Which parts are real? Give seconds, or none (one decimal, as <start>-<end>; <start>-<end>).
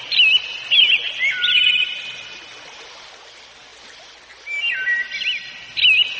0.0-6.2